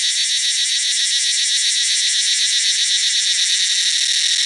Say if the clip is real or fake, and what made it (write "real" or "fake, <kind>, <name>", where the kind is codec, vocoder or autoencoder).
real